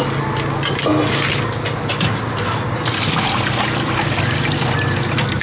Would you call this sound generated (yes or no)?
no